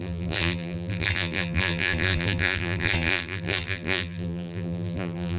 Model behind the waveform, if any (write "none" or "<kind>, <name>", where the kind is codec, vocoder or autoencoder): vocoder, BigVGAN v2